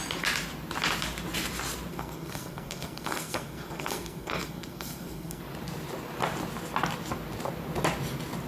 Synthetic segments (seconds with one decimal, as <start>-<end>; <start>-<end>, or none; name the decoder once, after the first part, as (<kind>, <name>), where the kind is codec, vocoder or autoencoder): 1.9-5.4 (codec, SNAC)